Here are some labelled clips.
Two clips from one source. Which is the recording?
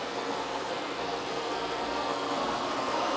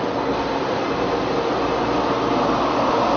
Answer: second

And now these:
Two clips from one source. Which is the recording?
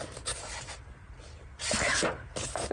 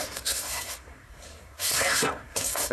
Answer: first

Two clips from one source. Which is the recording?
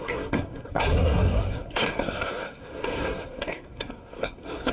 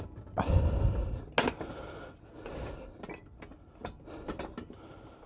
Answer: second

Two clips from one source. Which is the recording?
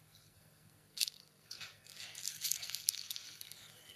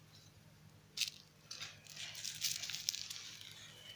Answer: second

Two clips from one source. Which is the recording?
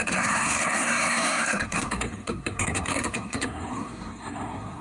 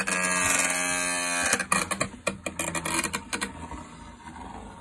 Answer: second